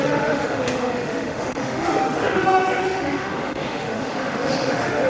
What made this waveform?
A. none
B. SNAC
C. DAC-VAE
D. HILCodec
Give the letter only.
C